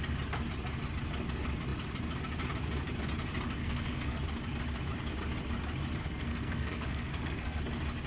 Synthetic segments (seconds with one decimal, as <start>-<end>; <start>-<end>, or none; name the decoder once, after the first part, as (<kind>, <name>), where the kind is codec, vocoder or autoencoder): 3.6-4.2 (codec, SNAC); 6.0-7.6